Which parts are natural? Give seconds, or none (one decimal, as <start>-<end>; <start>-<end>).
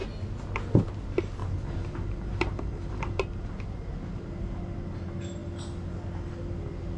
0.0-1.4; 3.2-7.0